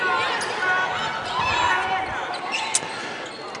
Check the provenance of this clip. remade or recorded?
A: recorded